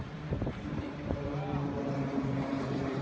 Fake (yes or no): yes